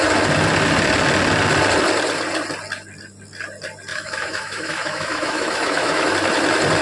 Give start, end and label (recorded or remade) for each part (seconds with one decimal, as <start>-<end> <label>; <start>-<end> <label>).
0.0-3.9 recorded; 3.9-6.1 remade; 6.1-6.8 recorded